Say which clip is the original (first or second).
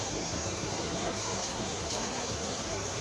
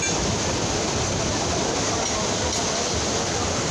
second